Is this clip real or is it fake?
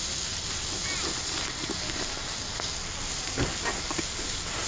real